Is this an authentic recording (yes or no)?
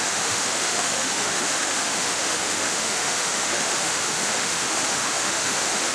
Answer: no